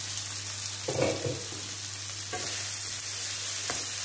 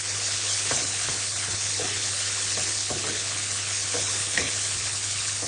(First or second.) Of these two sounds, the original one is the first